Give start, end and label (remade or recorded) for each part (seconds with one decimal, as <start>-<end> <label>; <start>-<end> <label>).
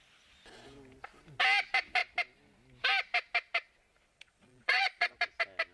0.0-4.1 recorded; 4.1-5.1 remade; 5.1-5.7 recorded